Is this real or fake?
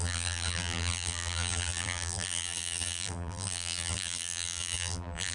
fake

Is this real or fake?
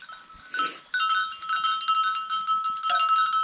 real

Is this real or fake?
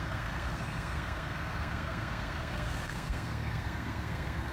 fake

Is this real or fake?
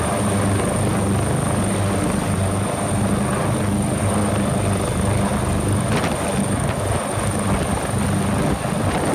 real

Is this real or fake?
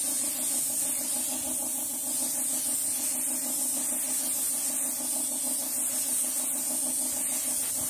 real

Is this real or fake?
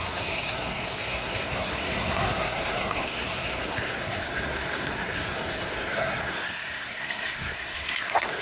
fake